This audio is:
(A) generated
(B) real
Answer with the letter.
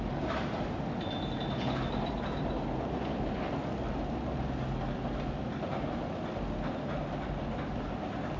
B